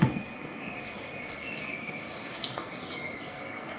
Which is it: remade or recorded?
remade